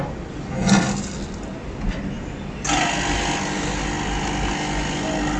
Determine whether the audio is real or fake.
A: real